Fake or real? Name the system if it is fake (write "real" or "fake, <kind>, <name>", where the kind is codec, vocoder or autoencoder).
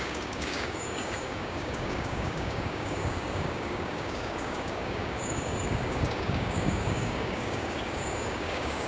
fake, codec, DAC